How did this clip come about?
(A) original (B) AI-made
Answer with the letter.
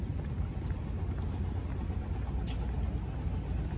A